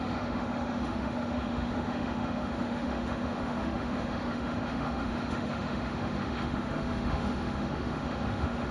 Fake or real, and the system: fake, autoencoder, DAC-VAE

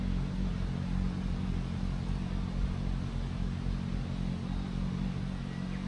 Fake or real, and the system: real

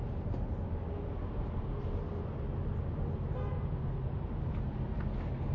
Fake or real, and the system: real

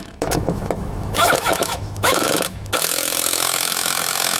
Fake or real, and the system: fake, autoencoder, DAC-VAE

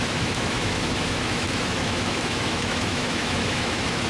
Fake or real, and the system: fake, autoencoder, DAC-VAE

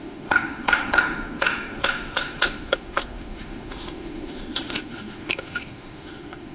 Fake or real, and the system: fake, autoencoder, DAC-VAE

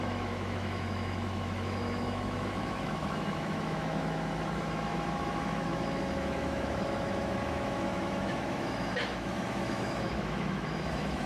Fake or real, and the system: fake, autoencoder, DAC-VAE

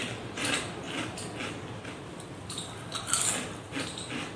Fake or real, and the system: real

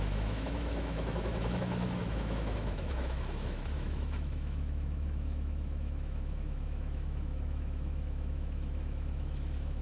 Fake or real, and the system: fake, autoencoder, DAC-VAE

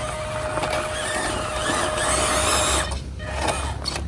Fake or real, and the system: real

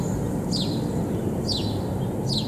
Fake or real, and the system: real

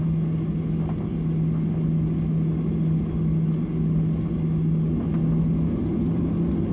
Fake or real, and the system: real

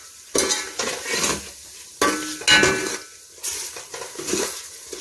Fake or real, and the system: real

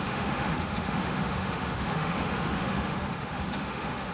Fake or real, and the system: fake, autoencoder, DAC-VAE